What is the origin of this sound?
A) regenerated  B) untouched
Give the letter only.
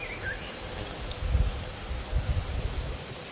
B